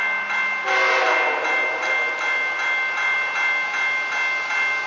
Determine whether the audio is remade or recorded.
recorded